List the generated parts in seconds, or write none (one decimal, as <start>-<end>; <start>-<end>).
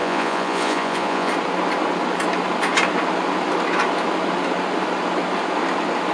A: 0.0-1.3